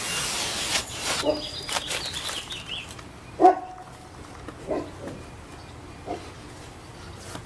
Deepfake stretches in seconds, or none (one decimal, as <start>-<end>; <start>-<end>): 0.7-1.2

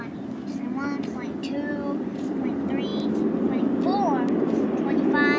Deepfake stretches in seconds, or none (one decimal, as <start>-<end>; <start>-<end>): none

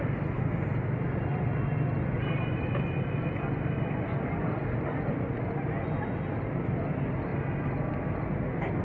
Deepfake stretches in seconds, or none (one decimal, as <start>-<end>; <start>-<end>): none

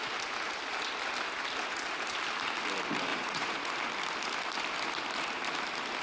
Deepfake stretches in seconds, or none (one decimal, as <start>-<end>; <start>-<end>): 3.1-3.7

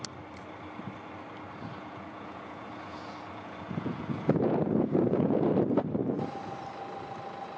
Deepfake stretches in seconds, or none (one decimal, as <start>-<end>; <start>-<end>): 1.7-5.4

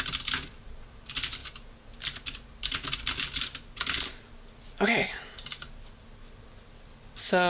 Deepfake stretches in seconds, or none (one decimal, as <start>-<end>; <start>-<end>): none

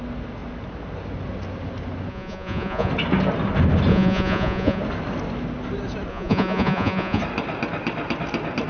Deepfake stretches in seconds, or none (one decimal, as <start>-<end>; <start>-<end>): 2.1-2.9; 3.9-4.8; 6.1-7.2

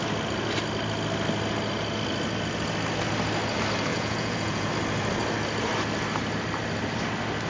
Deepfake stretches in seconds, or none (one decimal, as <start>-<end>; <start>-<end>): 3.9-4.7